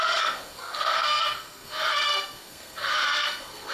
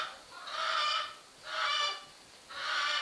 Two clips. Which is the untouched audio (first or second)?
second